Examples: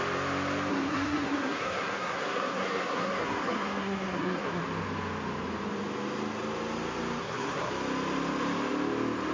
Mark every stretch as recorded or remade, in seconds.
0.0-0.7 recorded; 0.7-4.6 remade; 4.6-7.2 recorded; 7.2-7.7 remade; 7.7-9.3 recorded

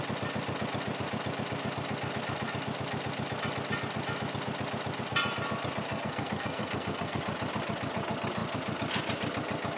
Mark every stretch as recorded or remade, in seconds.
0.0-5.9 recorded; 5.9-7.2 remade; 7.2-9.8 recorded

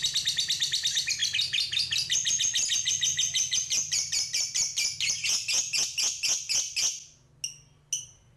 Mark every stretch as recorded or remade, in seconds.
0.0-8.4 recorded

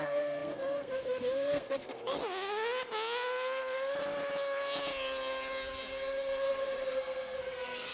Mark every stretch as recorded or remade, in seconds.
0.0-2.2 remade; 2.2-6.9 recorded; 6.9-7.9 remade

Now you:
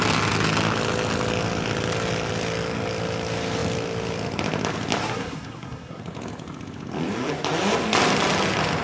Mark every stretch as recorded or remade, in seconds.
0.0-5.0 recorded; 5.0-6.0 remade; 6.0-8.8 recorded